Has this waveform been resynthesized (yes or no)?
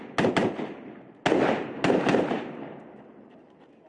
no